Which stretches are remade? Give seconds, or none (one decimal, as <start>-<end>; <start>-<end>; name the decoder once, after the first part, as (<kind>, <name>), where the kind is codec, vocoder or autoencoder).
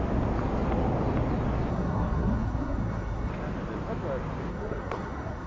1.7-3.3 (codec, SNAC); 4.5-5.5